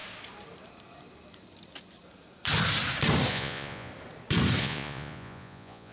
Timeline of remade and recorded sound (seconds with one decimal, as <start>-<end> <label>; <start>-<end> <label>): 0.0-3.3 recorded; 3.3-3.9 remade; 3.9-4.6 recorded; 4.6-5.9 remade